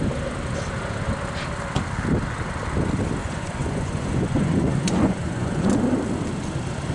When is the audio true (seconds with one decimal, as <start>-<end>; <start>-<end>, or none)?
0.0-3.2; 5.7-6.9